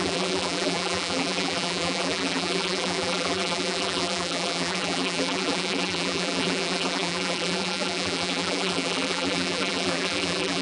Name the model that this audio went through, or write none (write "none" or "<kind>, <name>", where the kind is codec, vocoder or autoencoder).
vocoder, BigVGAN v2